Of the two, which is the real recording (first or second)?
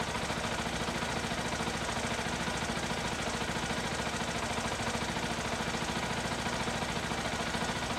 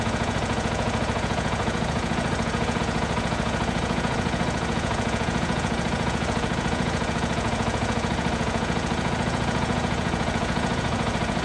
first